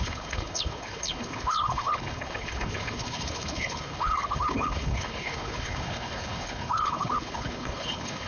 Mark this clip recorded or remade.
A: remade